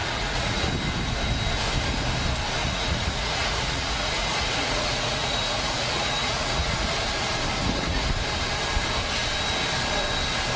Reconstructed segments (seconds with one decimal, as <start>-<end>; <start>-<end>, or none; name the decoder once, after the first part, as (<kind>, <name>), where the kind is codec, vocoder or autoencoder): 0.0-0.7 (vocoder, Vocos); 2.6-6.9; 7.6-8.1